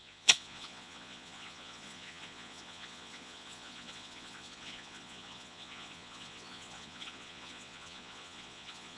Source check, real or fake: fake